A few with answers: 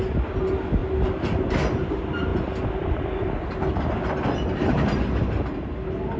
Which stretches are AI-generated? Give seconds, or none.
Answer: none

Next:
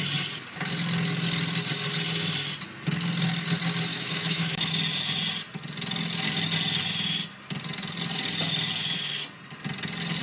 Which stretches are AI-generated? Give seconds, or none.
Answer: 3.9-4.7 (autoencoder, DAC-VAE)

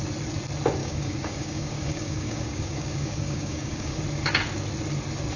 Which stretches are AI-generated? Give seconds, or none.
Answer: 0.8-4.0 (codec, DAC)

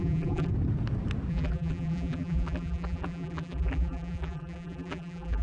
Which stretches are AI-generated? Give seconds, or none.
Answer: 0.0-0.5 (vocoder, BigVGAN v2); 1.3-5.4

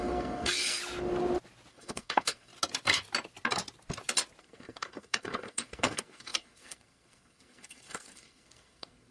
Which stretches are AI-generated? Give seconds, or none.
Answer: 0.0-0.8 (codec, SNAC); 1.7-2.5; 4.4-9.1

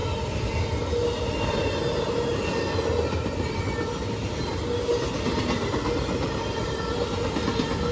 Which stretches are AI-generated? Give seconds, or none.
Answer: none

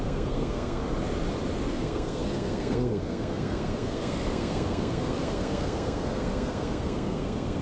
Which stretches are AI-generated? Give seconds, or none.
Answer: 0.0-0.8 (codec, SNAC); 1.7-7.6

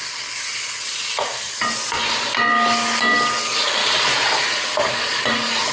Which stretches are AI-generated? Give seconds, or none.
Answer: 3.4-3.8 (codec, DAC); 4.6-5.0